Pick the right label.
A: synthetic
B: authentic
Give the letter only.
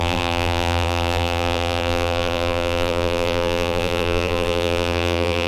A